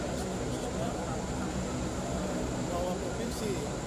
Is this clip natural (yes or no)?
yes